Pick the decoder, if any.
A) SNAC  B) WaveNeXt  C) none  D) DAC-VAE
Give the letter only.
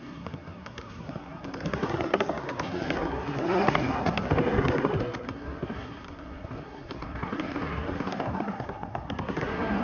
A